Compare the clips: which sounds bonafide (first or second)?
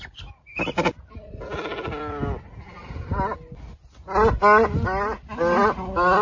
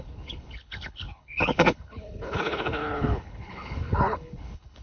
first